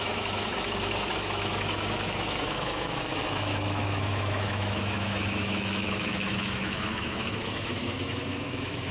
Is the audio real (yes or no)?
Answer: no